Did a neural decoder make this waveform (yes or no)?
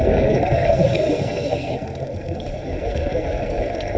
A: yes